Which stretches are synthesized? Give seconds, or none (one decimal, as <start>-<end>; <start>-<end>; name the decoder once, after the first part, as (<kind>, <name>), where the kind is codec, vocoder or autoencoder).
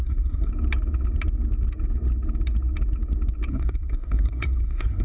0.0-0.5 (codec, SNAC); 3.5-5.0